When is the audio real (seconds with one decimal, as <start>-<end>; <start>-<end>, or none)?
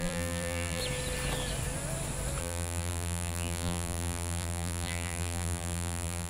0.8-2.4